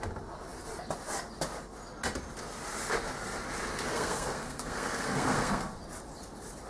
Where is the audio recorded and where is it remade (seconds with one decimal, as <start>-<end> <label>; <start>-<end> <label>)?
0.0-3.9 recorded; 3.9-5.8 remade; 5.8-6.7 recorded